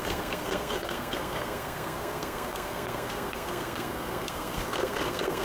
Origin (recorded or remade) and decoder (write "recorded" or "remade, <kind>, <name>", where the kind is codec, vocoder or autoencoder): remade, codec, SNAC